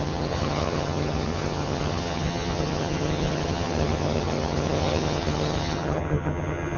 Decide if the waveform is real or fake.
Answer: fake